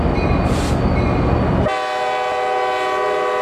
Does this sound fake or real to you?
real